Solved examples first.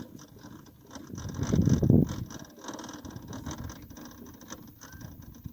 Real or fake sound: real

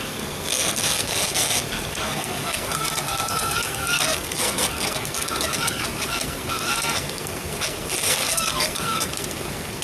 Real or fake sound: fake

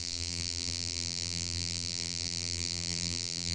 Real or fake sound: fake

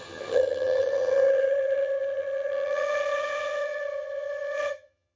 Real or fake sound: fake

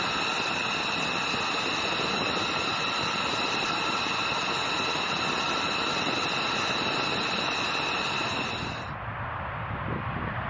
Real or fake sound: real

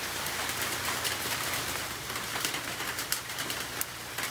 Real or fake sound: real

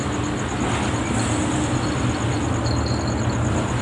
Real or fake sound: real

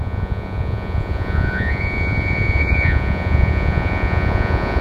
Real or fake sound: fake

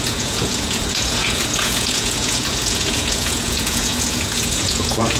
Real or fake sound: fake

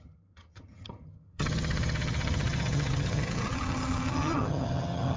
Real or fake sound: fake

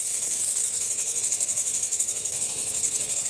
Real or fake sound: fake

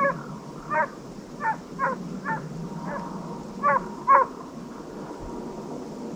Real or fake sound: real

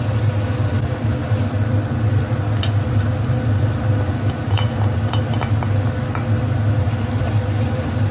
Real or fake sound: real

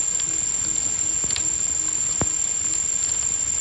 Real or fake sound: real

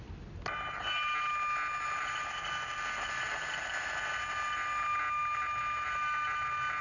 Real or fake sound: real